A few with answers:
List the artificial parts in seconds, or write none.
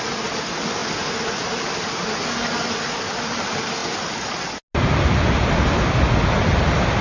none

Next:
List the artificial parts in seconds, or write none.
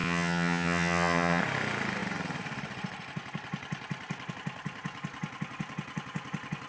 0.0-1.4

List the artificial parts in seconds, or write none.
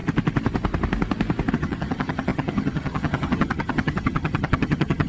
1.5-5.1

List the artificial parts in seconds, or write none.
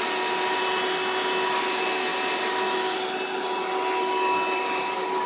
none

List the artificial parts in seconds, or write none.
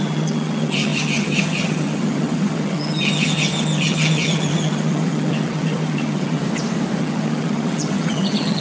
0.0-6.4; 7.0-8.6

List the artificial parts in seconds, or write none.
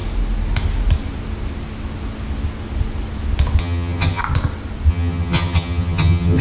3.6-4.2; 4.9-6.4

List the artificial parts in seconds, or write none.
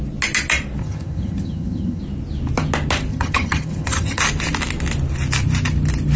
0.8-2.0; 3.1-4.2